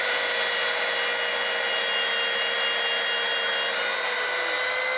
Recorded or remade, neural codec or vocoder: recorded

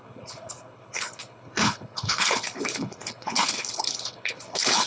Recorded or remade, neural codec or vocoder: remade, codec, HILCodec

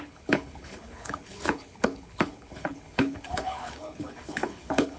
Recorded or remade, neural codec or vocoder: remade, codec, HILCodec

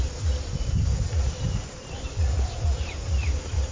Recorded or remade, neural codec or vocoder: recorded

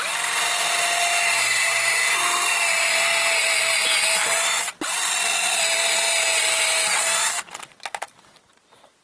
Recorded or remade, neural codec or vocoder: recorded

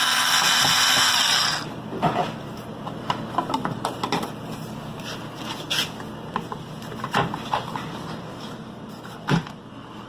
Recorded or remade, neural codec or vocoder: recorded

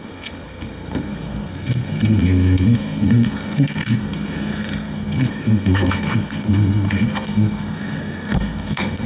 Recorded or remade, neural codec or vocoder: remade, codec, SNAC